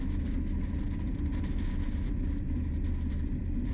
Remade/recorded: recorded